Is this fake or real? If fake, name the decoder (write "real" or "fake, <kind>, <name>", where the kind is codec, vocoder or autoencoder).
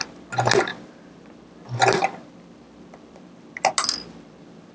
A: fake, vocoder, BigVGAN v2